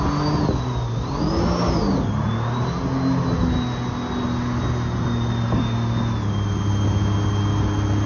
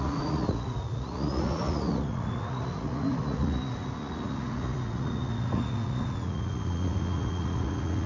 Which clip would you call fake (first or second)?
second